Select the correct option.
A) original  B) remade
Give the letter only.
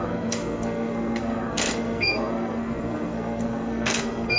B